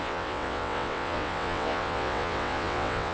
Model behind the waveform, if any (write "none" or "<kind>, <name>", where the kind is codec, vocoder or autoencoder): vocoder, WaveNeXt